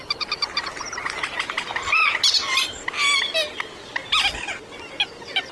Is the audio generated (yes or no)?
no